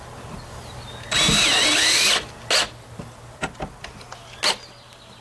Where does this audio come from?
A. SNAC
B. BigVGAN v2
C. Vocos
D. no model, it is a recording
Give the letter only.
D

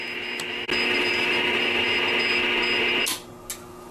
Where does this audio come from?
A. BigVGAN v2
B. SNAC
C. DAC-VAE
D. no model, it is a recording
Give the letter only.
D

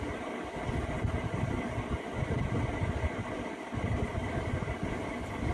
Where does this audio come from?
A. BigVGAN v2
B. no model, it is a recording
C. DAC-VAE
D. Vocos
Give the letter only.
B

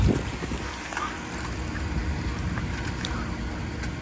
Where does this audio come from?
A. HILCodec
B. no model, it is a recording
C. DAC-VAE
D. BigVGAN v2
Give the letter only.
B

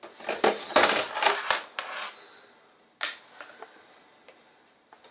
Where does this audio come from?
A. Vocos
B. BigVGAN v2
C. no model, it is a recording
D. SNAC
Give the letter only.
C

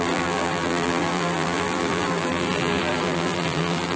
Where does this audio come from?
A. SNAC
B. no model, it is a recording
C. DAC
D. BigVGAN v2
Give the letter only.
D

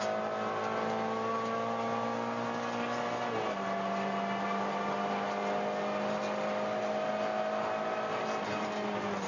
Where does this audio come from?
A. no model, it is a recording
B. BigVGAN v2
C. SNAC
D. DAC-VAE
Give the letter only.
A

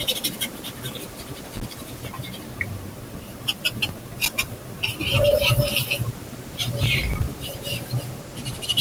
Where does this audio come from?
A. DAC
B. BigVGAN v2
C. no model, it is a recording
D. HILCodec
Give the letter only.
B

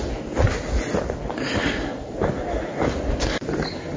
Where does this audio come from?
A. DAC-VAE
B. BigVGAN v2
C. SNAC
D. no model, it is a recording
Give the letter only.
D